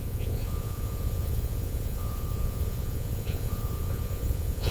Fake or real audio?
fake